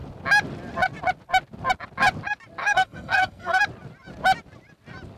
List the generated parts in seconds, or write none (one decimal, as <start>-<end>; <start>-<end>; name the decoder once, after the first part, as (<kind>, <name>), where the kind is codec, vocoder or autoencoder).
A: 2.6-3.6 (codec, SNAC)